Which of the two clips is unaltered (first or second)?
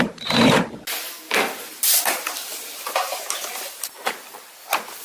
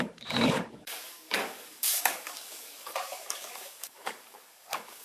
first